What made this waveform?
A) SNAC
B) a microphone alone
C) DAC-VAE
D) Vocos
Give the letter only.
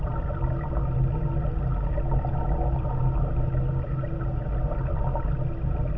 B